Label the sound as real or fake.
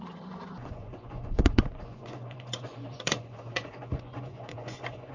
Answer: fake